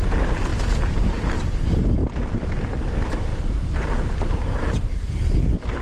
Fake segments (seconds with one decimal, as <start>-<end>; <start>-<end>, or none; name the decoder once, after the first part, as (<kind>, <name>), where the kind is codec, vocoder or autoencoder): 0.5-1.3 (vocoder, BigVGAN v2); 3.3-4.9